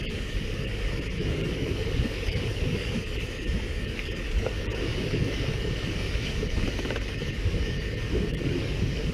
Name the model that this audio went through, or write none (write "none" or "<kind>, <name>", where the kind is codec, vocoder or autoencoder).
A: codec, DAC